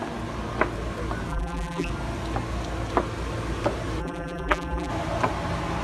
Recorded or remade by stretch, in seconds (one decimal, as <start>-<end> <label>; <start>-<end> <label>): 0.0-1.3 recorded; 1.3-1.9 remade; 1.9-4.0 recorded; 4.0-4.9 remade; 4.9-5.8 recorded